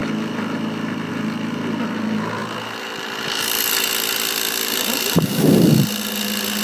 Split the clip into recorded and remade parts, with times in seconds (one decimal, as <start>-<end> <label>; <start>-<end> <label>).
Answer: 0.0-6.6 recorded